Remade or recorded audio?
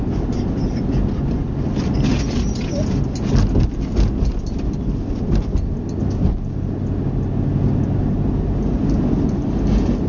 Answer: recorded